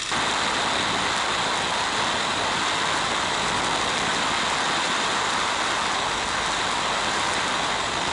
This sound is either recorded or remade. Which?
recorded